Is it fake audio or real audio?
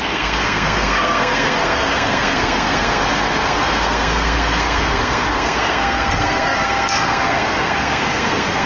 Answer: fake